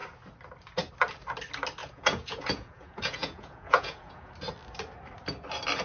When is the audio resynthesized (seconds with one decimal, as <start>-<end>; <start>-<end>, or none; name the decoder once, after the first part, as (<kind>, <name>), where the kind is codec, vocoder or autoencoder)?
1.8-4.3 (vocoder, Vocos)